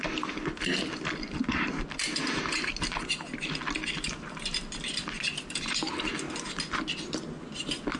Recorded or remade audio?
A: recorded